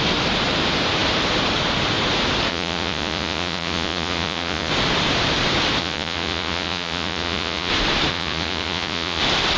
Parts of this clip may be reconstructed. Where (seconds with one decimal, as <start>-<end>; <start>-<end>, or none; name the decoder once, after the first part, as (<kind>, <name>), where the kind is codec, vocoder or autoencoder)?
2.5-4.7 (vocoder, Vocos); 5.8-7.7; 8.1-9.2